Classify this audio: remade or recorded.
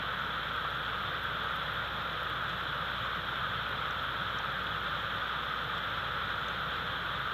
recorded